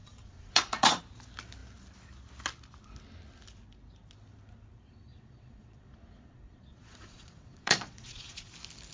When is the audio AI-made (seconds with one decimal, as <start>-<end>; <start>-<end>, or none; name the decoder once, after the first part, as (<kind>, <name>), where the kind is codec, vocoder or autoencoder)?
0.0-1.0 (vocoder, Vocos); 5.1-8.5